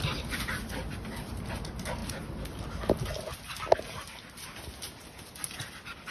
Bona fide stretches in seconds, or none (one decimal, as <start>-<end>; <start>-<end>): 0.0-6.1